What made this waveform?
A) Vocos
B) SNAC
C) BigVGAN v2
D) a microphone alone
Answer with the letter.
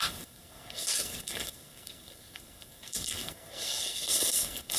B